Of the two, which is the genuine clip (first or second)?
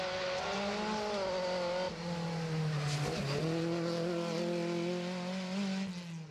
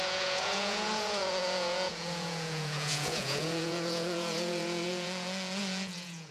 first